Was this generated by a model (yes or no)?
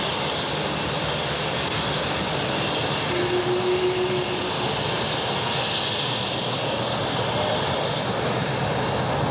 no